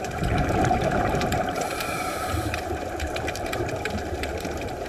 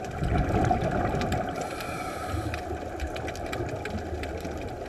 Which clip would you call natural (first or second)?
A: second